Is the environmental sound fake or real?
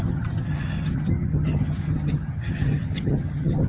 fake